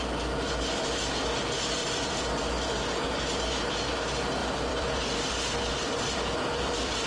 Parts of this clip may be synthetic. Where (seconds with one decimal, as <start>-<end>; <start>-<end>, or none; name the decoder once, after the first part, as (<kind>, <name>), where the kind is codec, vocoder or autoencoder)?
1.8-2.6 (vocoder, BigVGAN v2); 4.4-7.1